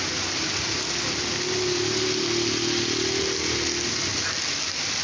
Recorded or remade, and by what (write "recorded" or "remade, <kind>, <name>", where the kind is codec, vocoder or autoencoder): recorded